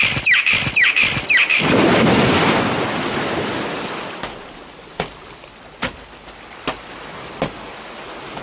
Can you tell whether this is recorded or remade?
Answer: remade